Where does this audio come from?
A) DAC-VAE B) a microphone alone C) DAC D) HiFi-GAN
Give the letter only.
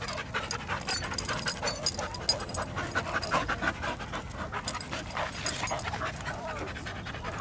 B